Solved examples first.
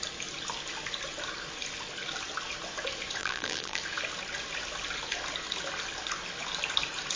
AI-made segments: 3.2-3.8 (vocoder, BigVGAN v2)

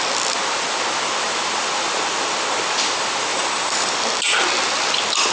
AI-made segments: 3.3-4.0 (vocoder, BigVGAN v2)

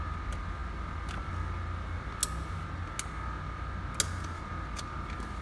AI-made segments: none